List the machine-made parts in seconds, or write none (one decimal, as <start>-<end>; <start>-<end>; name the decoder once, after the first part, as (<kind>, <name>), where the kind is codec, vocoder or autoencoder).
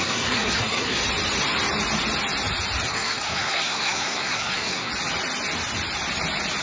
0.0-1.0 (codec, SNAC); 2.9-4.9